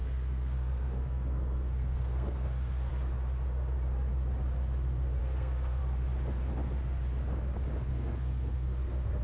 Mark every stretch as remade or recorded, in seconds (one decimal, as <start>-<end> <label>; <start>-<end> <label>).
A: 0.0-2.9 remade; 2.9-5.2 recorded; 5.2-5.8 remade; 5.8-7.9 recorded; 7.9-9.2 remade

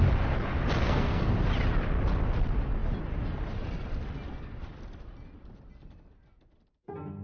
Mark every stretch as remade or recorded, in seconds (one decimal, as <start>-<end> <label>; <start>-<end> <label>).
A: 0.0-0.8 recorded; 0.8-1.3 remade; 1.3-7.2 recorded

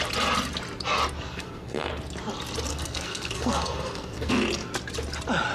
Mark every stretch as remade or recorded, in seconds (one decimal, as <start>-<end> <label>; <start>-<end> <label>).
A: 0.0-1.3 recorded; 1.3-1.9 remade; 1.9-2.7 recorded; 2.7-4.3 remade; 4.3-5.5 recorded

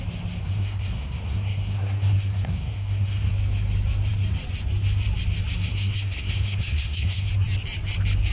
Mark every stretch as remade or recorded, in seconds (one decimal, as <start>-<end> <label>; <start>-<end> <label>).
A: 0.0-0.4 recorded; 0.4-3.3 remade; 3.3-5.7 recorded; 5.7-7.3 remade; 7.3-8.3 recorded

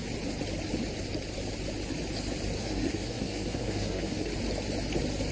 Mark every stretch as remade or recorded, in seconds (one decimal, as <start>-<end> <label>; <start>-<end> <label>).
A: 0.0-2.6 recorded; 2.6-4.3 remade; 4.3-5.3 recorded

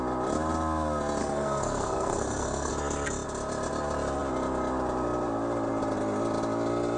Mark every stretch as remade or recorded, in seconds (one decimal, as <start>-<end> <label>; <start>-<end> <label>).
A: 0.0-1.2 recorded; 1.2-2.7 remade; 2.7-7.0 recorded

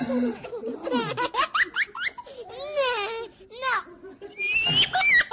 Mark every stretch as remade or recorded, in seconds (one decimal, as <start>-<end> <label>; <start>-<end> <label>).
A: 0.0-5.3 recorded

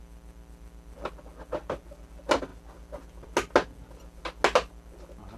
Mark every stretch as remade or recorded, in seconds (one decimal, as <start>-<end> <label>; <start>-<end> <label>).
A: 0.0-5.4 recorded